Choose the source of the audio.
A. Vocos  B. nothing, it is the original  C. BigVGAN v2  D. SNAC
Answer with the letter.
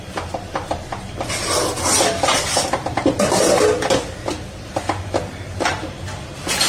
B